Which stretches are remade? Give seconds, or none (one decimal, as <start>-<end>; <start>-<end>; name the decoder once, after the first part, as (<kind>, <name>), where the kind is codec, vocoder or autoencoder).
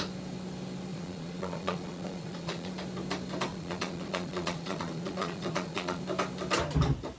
0.9-2.7 (vocoder, Vocos); 3.5-6.0